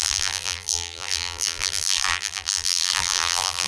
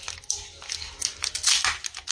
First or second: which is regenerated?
first